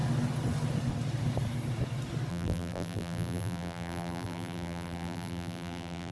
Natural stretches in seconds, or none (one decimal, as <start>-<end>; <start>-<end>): 0.0-2.3